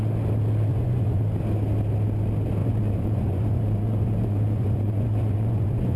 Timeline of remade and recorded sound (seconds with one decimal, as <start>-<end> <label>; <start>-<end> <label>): 0.0-0.7 recorded; 0.7-1.2 remade; 1.2-2.6 recorded; 2.6-6.0 remade